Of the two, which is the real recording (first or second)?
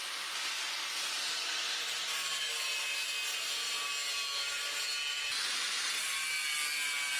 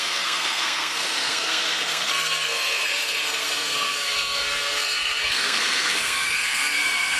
first